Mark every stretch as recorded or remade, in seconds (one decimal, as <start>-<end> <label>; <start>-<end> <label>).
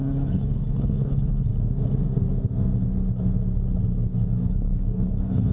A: 0.0-1.5 remade; 1.5-4.5 recorded; 4.5-5.5 remade